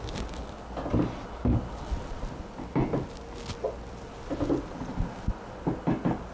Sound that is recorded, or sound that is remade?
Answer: recorded